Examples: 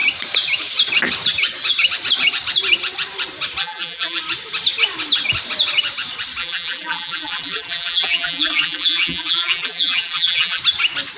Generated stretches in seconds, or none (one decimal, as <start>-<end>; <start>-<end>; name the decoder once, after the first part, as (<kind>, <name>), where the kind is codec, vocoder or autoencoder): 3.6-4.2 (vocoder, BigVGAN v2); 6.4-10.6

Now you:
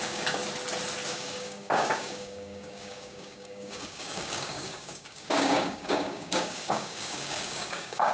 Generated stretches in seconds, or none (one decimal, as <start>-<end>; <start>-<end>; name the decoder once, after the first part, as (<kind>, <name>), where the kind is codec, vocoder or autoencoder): 0.0-0.4 (codec, DAC); 1.1-8.1

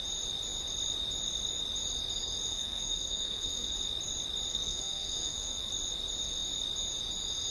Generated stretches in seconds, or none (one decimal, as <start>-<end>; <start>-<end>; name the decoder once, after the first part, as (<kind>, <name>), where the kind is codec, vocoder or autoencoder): 2.5-3.7 (codec, SNAC); 4.5-5.7